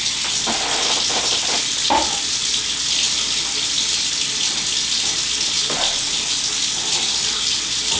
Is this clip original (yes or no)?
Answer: yes